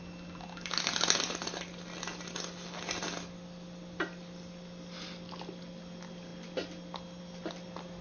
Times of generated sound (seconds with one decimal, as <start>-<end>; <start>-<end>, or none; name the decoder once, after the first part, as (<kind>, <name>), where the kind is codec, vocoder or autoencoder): none